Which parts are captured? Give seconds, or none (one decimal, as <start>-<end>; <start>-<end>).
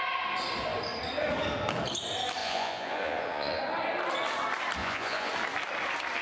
0.0-2.4; 3.6-4.8; 5.3-6.2